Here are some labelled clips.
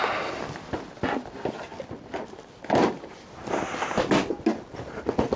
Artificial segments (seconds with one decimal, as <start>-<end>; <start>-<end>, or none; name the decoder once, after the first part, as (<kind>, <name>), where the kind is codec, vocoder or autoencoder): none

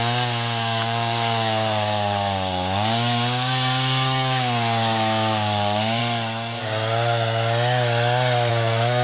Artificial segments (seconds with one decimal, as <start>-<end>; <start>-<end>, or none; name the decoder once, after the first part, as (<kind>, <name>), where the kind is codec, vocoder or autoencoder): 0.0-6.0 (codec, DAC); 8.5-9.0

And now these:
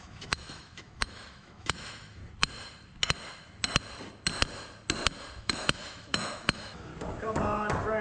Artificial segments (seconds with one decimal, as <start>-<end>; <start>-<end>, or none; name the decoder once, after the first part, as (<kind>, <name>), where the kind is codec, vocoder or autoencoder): 0.0-2.2 (autoencoder, DAC-VAE); 5.4-6.9

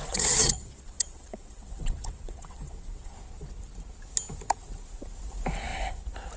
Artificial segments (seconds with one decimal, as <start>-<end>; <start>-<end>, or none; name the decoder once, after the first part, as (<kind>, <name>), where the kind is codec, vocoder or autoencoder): 0.0-3.1 (vocoder, WaveNeXt)

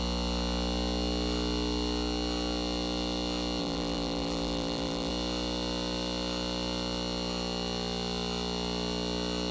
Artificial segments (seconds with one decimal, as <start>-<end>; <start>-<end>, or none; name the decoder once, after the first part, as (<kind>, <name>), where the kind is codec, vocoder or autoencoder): 3.6-5.1 (vocoder, BigVGAN v2)

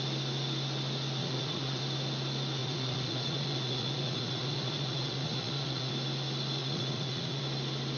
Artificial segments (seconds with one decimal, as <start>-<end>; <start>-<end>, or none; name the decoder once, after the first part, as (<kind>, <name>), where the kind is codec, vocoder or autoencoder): 1.2-1.8 (vocoder, Vocos); 2.6-5.9; 6.6-7.4

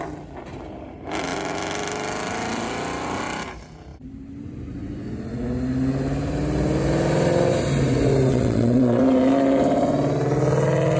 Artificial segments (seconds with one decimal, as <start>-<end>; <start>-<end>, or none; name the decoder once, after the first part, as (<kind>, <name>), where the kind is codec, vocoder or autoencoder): 8.3-9.0 (vocoder, WaveNeXt)